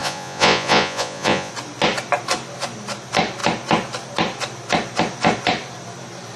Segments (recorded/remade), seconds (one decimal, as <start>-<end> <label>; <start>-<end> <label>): 0.0-1.5 remade; 1.5-6.4 recorded